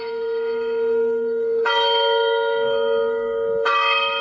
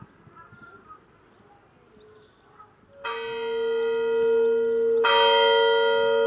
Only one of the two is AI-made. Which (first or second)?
first